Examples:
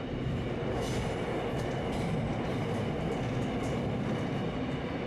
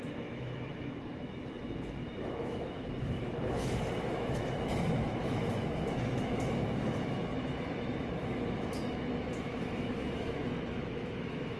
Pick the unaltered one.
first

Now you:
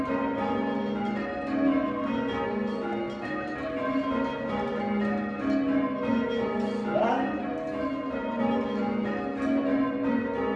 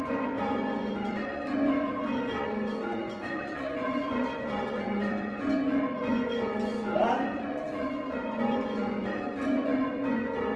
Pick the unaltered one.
first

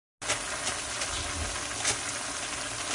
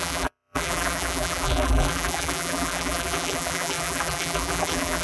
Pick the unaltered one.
first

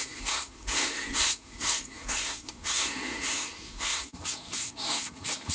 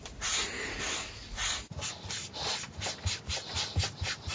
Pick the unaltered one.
second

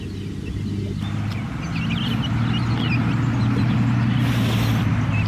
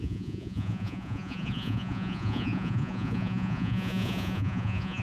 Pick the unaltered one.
first